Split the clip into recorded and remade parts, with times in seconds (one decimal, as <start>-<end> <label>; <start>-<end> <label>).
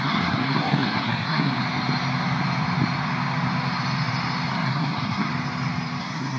0.0-1.6 remade; 1.6-4.5 recorded; 4.5-5.3 remade; 5.3-6.0 recorded; 6.0-6.4 remade